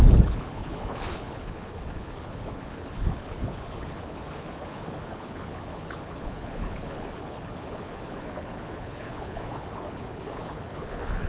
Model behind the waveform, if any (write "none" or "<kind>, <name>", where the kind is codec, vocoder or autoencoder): codec, HILCodec